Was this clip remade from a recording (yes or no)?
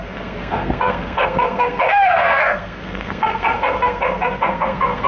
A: yes